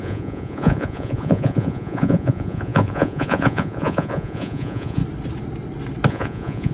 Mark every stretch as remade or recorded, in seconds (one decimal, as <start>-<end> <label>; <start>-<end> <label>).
0.0-5.0 remade; 5.0-6.1 recorded; 6.1-6.7 remade